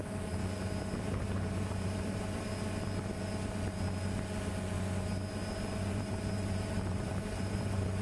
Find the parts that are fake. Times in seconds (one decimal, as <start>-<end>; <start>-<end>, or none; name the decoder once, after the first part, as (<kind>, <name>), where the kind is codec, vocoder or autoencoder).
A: 0.0-0.4 (vocoder, BigVGAN v2); 1.0-2.5; 5.9-8.0